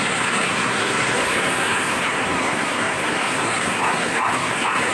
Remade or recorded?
remade